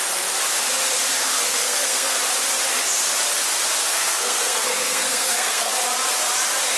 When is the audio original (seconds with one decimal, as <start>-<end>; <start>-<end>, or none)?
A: 0.0-1.6; 2.2-3.9; 5.7-6.8